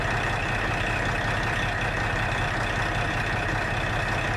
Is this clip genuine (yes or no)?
yes